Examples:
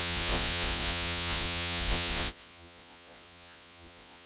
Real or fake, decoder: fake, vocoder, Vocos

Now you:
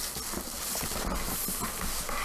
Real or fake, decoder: real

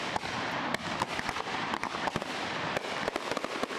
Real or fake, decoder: real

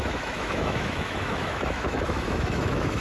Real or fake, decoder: fake, autoencoder, DAC-VAE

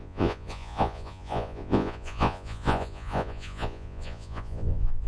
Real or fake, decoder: fake, vocoder, Vocos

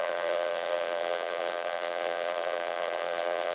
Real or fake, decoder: fake, vocoder, BigVGAN v2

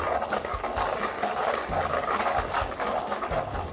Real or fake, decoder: real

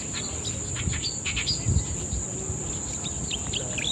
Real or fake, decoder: real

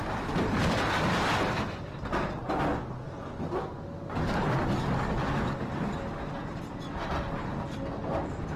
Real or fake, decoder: real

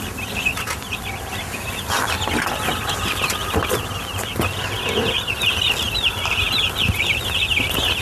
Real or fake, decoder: real